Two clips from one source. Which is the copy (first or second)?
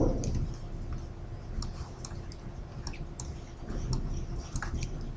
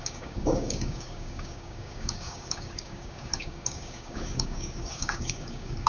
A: second